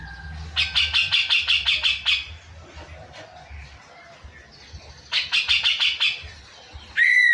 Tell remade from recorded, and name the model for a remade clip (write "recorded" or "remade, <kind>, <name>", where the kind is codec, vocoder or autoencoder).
recorded